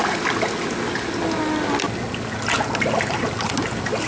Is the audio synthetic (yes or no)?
no